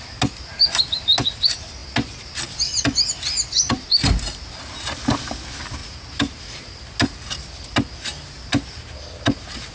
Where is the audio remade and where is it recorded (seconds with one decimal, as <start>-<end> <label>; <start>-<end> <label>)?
0.0-9.7 recorded